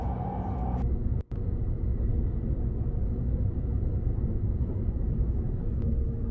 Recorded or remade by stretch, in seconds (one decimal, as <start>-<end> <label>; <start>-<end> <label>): 0.0-6.3 recorded